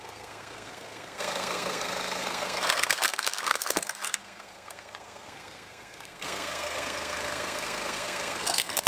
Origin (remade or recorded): remade